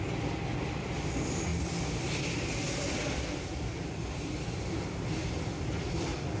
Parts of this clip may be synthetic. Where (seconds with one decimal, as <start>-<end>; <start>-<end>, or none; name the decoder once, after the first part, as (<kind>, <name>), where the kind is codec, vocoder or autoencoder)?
none